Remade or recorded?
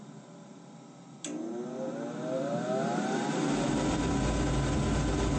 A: recorded